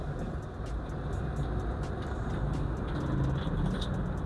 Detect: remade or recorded recorded